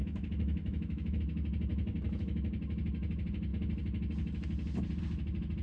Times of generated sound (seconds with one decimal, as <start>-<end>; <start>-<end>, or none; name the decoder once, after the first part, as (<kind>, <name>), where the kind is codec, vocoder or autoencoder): 0.0-1.2 (autoencoder, DAC-VAE)

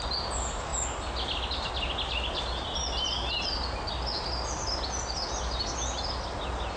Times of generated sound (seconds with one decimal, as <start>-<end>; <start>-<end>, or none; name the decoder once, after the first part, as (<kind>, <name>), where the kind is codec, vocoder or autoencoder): none

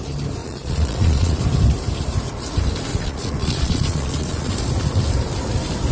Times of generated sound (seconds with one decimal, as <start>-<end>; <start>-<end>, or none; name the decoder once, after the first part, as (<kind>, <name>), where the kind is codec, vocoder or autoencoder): 0.4-1.4 (vocoder, Vocos); 2.9-4.5

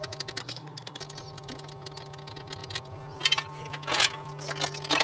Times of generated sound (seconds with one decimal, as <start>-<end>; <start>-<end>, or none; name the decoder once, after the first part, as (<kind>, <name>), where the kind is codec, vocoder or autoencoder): 0.4-1.0 (codec, SNAC)

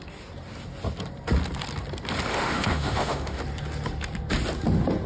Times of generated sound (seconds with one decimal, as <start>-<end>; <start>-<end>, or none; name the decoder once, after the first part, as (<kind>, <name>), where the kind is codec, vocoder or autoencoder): 2.3-3.4 (autoencoder, DAC-VAE)